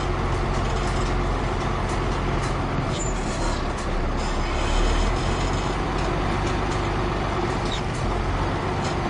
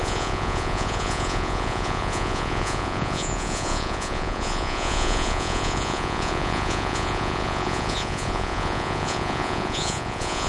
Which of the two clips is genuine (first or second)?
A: first